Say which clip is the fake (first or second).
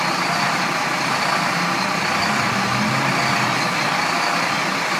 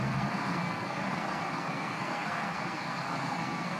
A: second